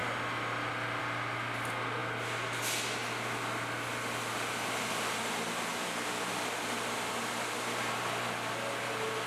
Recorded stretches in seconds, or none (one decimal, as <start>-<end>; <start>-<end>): 0.0-9.3